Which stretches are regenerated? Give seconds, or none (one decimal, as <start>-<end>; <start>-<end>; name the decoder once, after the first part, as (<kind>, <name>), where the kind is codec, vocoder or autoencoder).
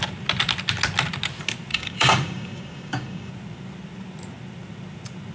1.7-3.3 (codec, DAC)